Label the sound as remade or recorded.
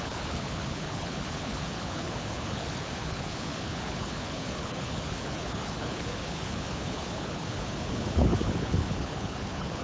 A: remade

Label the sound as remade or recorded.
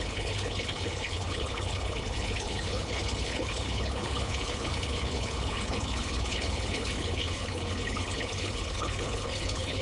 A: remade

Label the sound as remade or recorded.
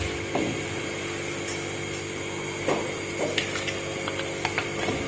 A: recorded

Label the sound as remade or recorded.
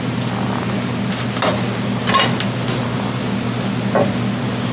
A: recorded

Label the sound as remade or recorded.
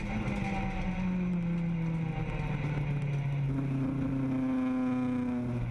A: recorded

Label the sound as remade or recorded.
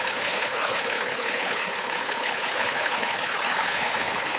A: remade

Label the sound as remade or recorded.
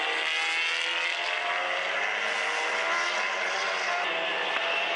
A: recorded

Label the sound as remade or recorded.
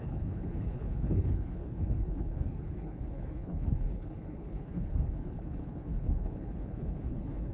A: remade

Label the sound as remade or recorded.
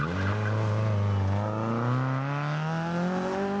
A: recorded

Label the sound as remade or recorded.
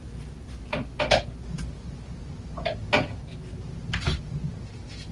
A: recorded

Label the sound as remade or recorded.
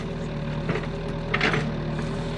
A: recorded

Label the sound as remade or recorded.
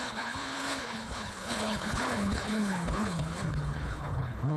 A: remade